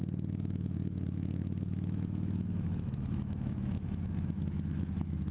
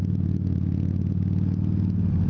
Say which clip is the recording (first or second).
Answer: second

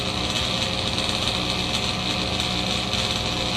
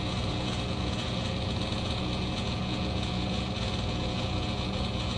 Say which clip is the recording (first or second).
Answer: first